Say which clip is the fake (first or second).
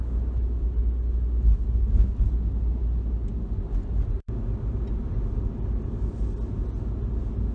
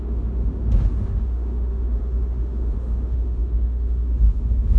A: second